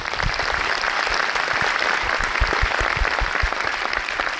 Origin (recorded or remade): recorded